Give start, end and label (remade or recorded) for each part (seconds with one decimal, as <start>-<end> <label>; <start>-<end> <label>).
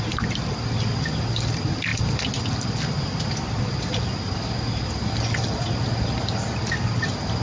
0.0-7.4 recorded